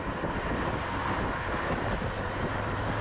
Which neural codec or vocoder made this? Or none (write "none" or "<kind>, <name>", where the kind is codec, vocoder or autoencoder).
none